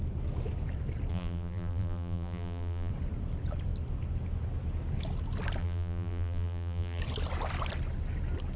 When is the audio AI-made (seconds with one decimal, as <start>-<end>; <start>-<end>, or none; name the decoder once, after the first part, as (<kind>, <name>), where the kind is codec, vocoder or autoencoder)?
1.1-2.9 (vocoder, BigVGAN v2); 5.6-7.0